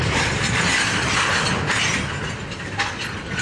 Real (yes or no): yes